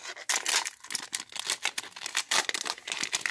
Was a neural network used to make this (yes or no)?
no